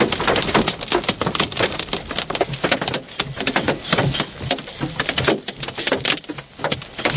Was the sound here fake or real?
real